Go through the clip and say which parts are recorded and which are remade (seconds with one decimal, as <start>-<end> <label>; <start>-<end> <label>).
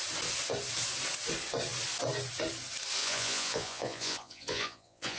0.0-3.0 recorded; 3.0-5.2 remade